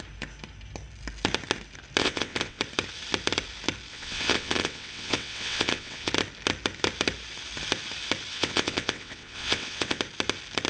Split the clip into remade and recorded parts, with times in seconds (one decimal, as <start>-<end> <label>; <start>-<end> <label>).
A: 0.0-2.0 recorded; 2.0-2.6 remade; 2.6-3.9 recorded; 3.9-6.1 remade; 6.1-8.3 recorded; 8.3-10.0 remade; 10.0-10.7 recorded